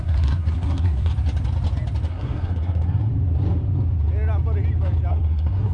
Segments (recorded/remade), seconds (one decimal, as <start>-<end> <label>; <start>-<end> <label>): 0.0-1.1 remade; 1.1-2.1 recorded; 2.1-3.1 remade; 3.1-5.1 recorded; 5.1-5.7 remade